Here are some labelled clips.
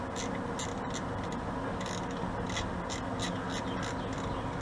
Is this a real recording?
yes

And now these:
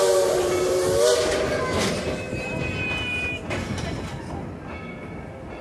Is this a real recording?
yes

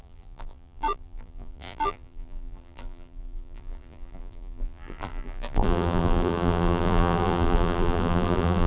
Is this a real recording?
no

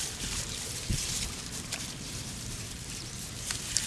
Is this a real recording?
no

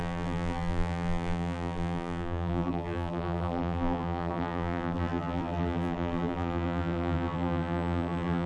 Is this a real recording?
no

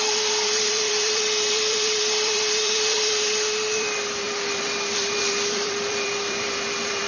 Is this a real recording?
no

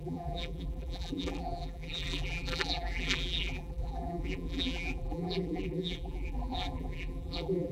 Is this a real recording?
no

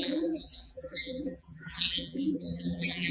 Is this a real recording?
no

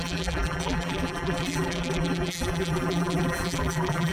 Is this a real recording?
no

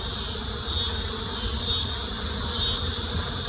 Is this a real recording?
yes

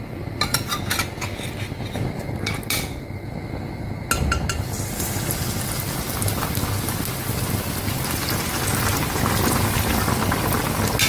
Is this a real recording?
yes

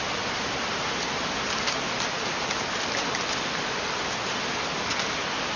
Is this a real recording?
no